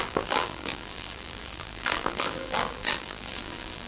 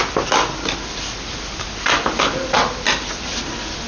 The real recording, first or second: second